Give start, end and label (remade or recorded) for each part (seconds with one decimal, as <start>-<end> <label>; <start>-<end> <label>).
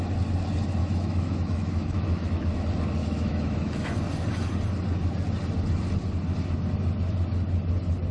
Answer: 0.0-0.8 recorded; 0.8-2.6 remade; 2.6-3.0 recorded; 3.0-3.9 remade; 3.9-8.1 recorded